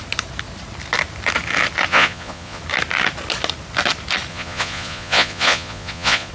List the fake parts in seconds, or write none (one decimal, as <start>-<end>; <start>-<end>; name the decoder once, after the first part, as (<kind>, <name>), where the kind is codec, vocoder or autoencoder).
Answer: 1.9-2.6 (vocoder, Vocos); 4.3-6.3